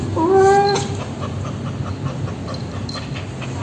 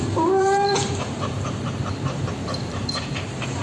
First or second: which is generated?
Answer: second